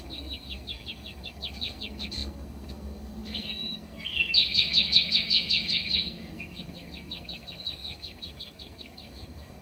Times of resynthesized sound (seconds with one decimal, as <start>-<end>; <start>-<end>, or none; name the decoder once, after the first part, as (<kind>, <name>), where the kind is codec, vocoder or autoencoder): 0.0-9.6 (codec, SNAC)